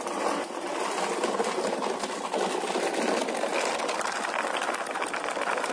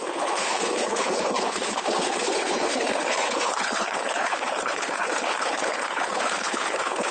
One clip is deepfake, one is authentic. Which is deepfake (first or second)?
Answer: second